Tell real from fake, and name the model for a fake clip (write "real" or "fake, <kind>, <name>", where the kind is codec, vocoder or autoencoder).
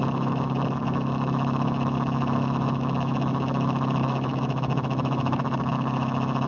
fake, autoencoder, DAC-VAE